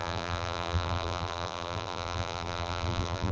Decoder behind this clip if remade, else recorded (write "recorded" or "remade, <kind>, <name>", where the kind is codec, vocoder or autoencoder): remade, vocoder, BigVGAN v2